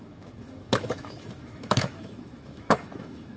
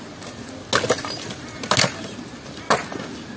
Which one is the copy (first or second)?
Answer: first